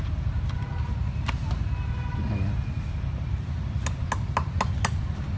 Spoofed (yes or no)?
no